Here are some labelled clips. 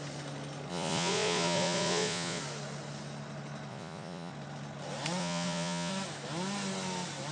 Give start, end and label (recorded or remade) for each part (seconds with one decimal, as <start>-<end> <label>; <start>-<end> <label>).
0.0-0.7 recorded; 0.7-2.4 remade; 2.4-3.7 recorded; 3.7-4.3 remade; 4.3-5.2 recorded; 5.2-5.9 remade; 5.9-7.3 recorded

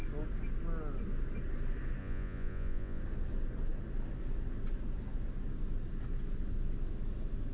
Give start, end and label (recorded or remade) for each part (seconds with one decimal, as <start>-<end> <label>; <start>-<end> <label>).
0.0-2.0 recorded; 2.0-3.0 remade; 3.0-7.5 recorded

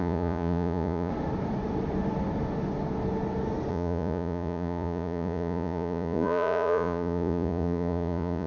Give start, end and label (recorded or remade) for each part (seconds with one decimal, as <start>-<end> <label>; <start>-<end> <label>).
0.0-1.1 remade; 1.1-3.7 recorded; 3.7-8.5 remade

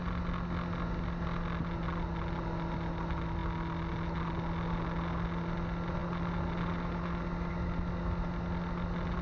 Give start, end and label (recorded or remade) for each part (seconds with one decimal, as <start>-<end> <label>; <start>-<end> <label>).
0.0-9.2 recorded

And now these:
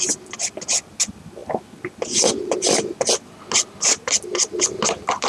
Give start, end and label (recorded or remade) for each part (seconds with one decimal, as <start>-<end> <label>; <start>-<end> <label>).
0.0-5.3 recorded